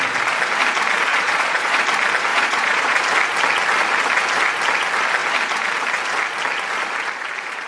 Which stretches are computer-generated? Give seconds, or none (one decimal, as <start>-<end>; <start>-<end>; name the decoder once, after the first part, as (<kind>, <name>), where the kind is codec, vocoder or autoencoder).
1.1-1.8 (vocoder, Vocos); 2.3-3.0